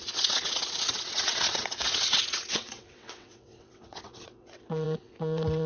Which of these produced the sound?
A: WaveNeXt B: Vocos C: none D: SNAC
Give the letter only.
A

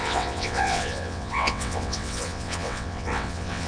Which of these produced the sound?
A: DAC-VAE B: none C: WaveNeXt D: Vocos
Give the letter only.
C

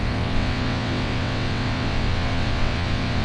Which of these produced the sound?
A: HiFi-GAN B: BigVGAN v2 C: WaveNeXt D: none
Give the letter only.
C